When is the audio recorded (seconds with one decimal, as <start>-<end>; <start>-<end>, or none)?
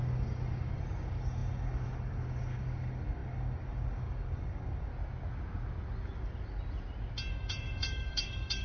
4.9-7.3